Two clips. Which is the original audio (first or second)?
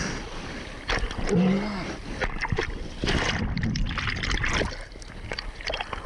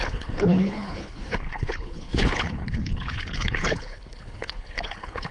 first